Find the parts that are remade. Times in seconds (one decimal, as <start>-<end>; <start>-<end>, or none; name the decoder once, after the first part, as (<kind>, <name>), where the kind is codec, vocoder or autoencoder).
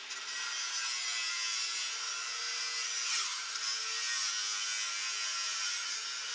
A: none